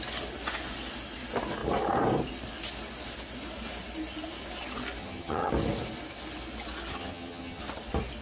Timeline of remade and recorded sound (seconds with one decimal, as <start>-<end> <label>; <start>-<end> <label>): 0.0-5.0 recorded; 5.0-5.5 remade; 5.5-6.9 recorded; 6.9-7.6 remade; 7.6-8.2 recorded